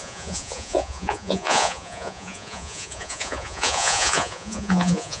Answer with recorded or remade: remade